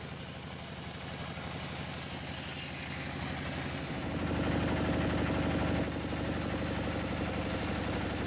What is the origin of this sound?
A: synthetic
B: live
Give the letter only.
B